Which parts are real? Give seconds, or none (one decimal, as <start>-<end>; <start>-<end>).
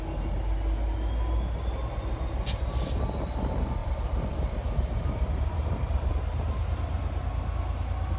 0.0-3.8; 6.1-8.2